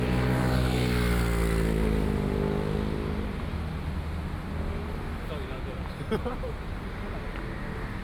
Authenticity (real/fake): real